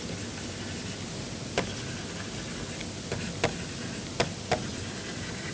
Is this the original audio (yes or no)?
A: yes